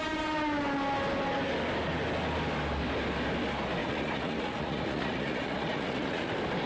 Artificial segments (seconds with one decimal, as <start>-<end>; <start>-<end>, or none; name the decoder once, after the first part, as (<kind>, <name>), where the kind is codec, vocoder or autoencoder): 3.8-6.3 (vocoder, Vocos)